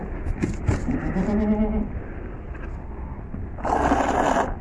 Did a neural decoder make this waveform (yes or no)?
no